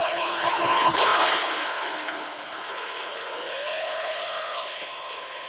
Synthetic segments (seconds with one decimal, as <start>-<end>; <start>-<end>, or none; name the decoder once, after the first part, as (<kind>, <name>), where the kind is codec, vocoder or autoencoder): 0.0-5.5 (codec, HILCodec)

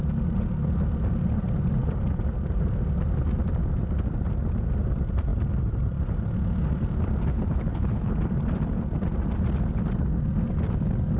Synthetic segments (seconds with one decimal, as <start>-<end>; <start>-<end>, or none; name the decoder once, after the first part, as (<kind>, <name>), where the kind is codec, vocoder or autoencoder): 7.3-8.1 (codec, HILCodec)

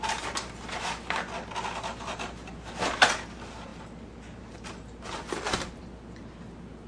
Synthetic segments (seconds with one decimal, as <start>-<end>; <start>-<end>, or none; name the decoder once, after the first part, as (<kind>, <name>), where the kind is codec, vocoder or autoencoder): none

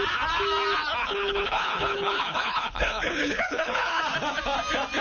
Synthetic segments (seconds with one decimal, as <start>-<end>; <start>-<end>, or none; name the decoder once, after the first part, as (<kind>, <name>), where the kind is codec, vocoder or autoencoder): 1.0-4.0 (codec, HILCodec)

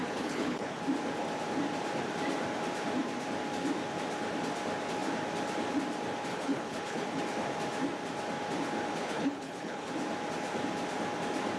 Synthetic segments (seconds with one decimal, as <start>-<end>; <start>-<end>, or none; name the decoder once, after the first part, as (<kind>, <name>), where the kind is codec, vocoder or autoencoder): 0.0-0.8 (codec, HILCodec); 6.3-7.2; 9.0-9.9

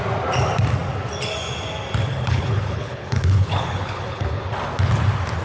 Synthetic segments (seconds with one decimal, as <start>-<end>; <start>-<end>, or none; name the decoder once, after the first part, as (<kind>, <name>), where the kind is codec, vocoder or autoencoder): 2.1-4.4 (codec, HILCodec)

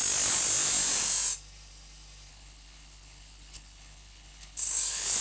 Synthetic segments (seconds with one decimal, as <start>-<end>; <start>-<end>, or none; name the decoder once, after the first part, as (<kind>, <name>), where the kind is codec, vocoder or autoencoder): 2.3-5.2 (codec, HILCodec)

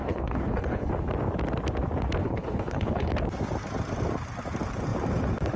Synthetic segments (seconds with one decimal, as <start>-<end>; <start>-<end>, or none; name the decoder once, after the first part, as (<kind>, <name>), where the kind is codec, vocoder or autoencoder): 0.0-0.9 (codec, HILCodec); 2.2-3.1